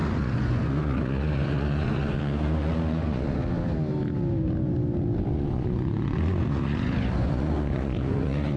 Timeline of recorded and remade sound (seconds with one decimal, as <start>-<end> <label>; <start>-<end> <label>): 0.0-3.4 remade; 3.4-5.3 recorded; 5.3-8.6 remade